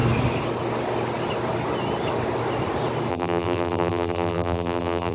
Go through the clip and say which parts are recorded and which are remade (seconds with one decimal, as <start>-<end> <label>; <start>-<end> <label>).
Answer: 0.0-3.1 recorded; 3.1-5.1 remade